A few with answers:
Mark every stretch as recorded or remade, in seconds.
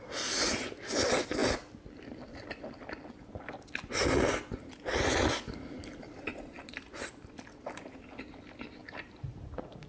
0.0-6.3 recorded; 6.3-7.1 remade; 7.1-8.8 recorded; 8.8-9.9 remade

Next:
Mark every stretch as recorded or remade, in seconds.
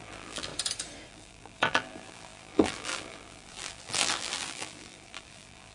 0.0-0.5 remade; 0.5-1.1 recorded; 1.1-5.7 remade